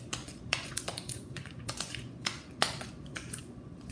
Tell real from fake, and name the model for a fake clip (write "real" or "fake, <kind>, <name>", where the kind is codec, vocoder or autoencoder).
fake, vocoder, Vocos